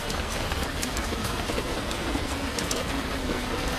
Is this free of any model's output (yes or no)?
no